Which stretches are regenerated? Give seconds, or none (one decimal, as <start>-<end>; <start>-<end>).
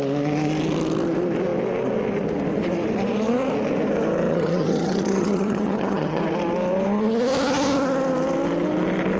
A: 4.3-6.2